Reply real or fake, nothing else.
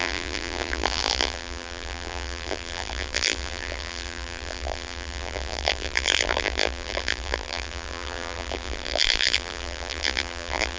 fake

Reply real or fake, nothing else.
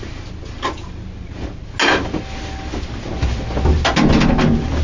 real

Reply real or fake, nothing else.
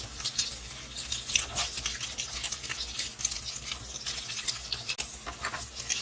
real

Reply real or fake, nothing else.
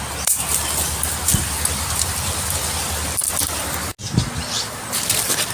real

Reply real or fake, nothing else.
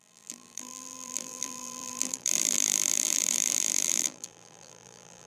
fake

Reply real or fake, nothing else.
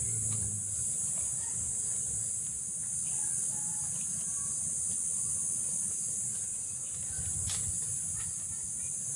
real